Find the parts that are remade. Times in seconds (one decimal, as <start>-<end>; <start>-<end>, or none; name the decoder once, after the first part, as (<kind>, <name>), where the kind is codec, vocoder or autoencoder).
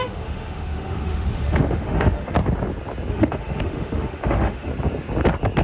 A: 0.0-2.4 (autoencoder, DAC-VAE); 3.1-4.7